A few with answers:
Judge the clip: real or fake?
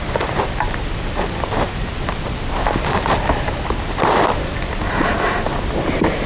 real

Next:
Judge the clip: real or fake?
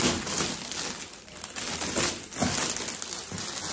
real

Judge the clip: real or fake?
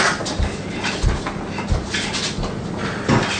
real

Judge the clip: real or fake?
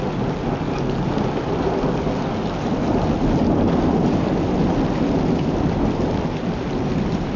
real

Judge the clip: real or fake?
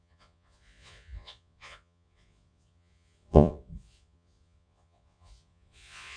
fake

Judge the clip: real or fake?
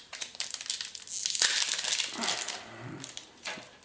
real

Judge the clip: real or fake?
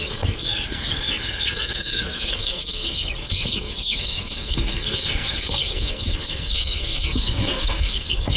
fake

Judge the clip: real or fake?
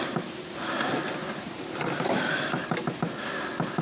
real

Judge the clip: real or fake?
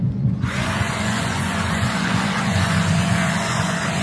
fake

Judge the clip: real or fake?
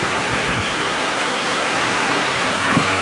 fake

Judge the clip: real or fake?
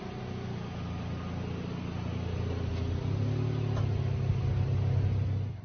real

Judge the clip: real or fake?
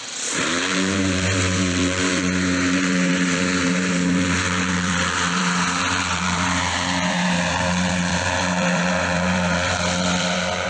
fake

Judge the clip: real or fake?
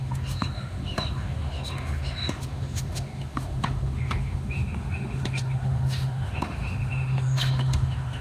fake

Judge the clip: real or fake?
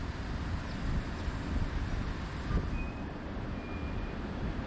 real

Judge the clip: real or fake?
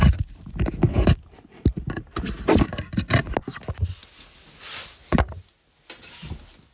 real